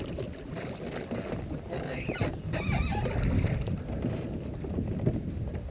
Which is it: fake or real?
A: real